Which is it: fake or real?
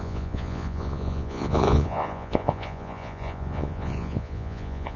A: fake